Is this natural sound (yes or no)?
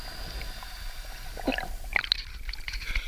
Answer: yes